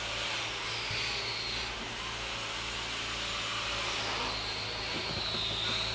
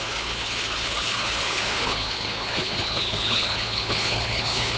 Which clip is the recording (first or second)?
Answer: first